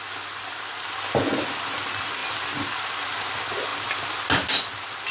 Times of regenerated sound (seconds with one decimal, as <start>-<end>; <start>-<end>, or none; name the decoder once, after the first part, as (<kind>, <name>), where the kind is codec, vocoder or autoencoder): none